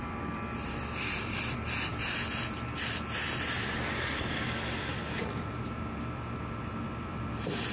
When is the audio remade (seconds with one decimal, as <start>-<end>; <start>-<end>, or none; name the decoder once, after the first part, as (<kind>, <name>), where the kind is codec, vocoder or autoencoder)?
none